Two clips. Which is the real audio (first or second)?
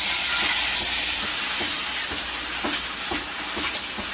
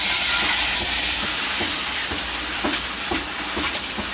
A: first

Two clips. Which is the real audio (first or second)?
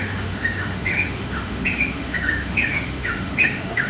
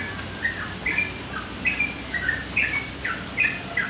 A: second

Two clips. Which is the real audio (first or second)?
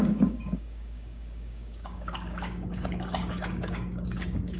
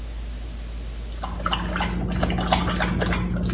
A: second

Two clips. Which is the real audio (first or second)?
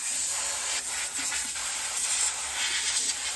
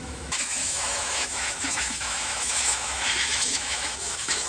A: first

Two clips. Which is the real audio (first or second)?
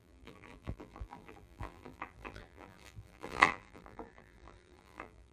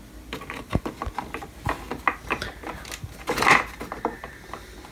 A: second